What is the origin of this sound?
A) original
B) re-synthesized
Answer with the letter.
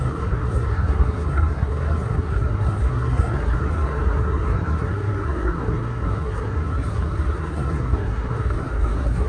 B